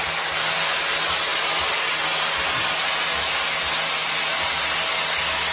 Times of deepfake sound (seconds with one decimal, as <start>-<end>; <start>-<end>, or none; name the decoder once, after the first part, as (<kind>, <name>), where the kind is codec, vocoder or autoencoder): 4.2-4.8 (vocoder, BigVGAN v2)

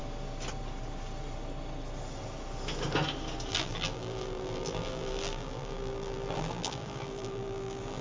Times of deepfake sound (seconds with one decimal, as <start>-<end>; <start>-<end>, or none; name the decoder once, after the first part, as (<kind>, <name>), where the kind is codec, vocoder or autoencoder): 3.5-8.0 (vocoder, BigVGAN v2)

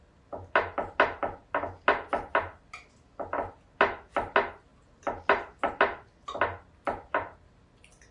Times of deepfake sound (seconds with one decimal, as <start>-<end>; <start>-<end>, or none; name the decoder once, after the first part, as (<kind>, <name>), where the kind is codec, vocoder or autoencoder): none

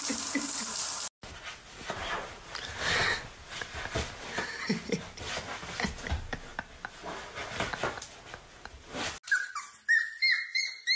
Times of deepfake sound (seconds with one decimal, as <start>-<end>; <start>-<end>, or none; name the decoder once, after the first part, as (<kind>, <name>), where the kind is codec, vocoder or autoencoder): none

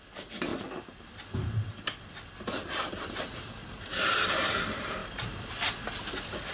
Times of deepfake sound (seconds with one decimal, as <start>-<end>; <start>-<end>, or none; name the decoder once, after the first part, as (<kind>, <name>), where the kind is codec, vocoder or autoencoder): 0.0-0.5 (vocoder, BigVGAN v2); 1.7-6.5

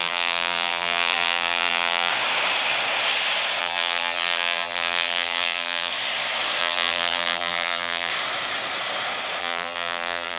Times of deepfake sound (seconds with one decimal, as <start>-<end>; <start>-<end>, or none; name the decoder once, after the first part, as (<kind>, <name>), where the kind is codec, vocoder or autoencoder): 0.0-2.1 (vocoder, BigVGAN v2); 3.6-5.9; 6.6-8.1; 9.4-10.4

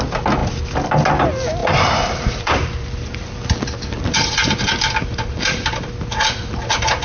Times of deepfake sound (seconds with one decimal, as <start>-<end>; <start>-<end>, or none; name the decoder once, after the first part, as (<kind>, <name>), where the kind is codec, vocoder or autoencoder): 1.6-5.8 (vocoder, BigVGAN v2)